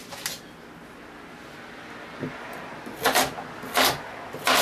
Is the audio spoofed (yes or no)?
no